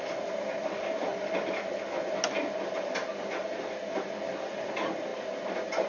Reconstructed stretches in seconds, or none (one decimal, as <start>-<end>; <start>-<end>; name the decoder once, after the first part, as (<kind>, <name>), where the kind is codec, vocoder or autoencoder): none